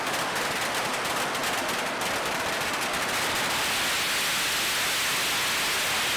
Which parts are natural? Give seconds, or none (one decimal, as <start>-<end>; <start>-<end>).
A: 0.0-6.2